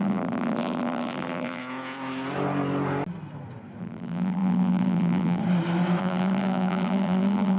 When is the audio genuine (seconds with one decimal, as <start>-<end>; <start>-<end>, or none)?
1.6-3.8; 5.4-6.0